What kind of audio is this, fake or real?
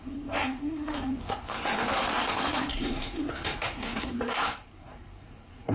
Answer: fake